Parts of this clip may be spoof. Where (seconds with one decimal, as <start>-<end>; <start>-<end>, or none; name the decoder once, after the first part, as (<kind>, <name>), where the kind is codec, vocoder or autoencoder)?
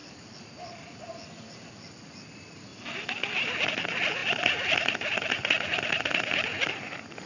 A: none